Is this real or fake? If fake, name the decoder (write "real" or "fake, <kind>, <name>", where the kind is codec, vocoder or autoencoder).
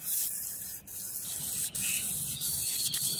real